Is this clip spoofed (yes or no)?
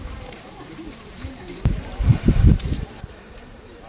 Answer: yes